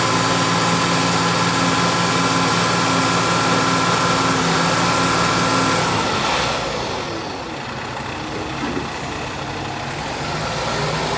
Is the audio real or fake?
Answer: real